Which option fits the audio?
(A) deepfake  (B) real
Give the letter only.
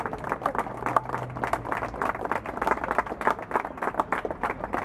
B